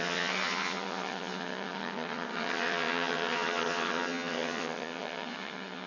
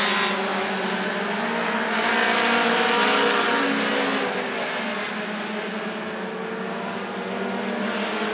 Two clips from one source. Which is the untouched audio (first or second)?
second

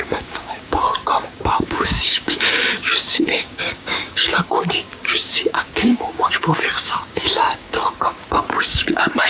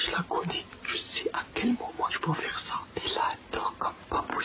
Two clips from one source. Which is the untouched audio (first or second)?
second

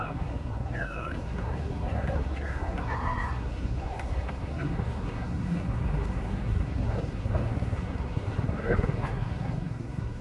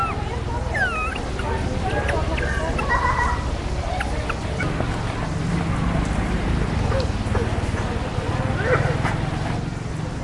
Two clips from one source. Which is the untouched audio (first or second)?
second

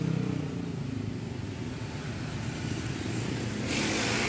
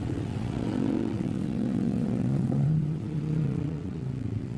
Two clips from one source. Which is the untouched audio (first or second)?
first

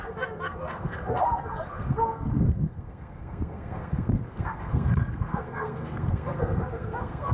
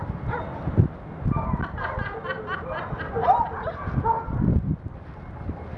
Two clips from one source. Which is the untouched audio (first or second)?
second